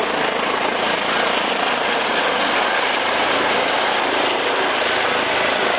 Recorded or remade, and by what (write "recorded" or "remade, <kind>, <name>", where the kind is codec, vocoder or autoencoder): recorded